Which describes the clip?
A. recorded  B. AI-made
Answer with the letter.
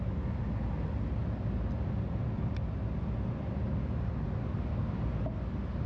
A